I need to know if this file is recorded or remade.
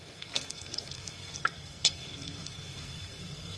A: remade